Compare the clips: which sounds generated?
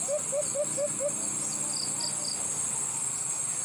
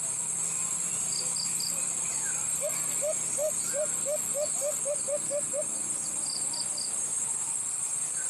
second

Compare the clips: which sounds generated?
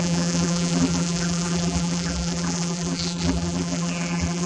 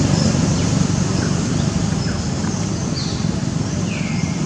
first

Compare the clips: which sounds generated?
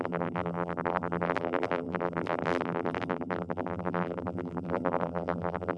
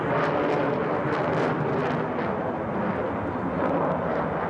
first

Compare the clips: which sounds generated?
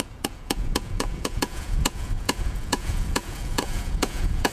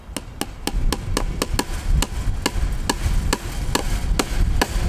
first